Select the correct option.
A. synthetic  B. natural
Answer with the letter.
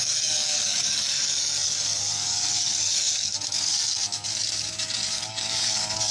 A